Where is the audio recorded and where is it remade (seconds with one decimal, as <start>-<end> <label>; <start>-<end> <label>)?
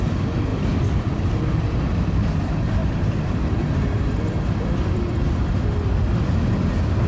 0.0-0.5 recorded; 0.5-1.6 remade; 1.6-2.8 recorded; 2.8-7.1 remade